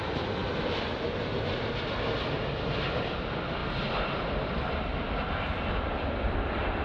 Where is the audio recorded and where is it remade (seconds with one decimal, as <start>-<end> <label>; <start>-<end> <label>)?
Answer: 0.0-6.8 recorded